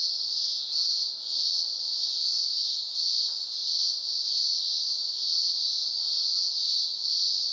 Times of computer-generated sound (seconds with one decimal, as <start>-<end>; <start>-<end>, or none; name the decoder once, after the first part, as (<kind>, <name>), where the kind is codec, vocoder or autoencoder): none